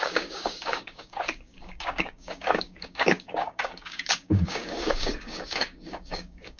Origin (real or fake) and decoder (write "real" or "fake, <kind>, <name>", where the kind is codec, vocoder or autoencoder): fake, codec, DAC